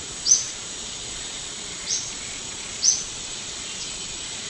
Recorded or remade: remade